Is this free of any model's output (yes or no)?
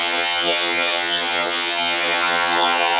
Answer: no